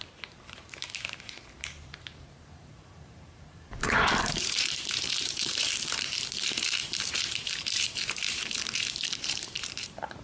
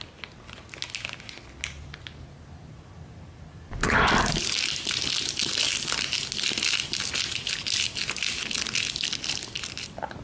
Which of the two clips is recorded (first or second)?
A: second